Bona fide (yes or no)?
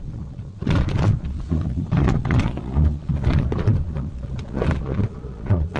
no